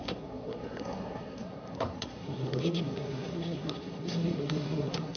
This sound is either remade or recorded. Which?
remade